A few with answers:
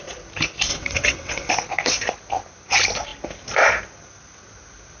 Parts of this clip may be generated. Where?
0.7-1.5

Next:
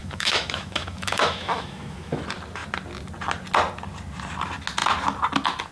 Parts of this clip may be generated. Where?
0.0-2.2

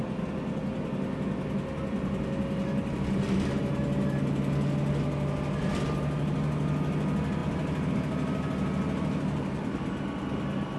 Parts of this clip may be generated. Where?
none

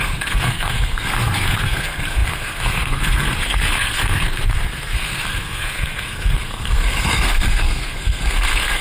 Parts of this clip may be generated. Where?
0.0-8.8

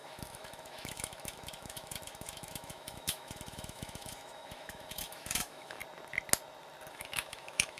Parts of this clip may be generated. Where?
0.0-5.8; 6.9-7.8